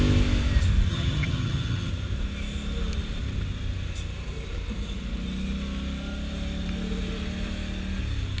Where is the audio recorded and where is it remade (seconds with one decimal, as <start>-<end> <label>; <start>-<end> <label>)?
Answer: 0.0-0.9 recorded; 0.9-1.9 remade; 1.9-8.4 recorded